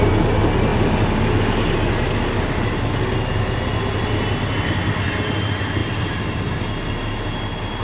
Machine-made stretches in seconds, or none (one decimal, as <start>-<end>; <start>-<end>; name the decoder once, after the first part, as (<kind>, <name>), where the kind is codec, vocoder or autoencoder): none